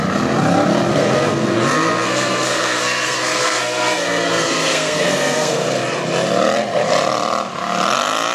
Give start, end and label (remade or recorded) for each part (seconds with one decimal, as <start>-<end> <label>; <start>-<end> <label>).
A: 0.0-0.9 recorded; 0.9-5.8 remade; 5.8-8.3 recorded